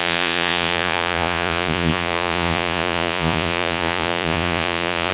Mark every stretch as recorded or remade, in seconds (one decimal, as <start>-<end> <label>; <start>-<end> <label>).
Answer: 0.0-5.1 remade